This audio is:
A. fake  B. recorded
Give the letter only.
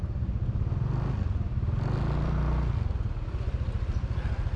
B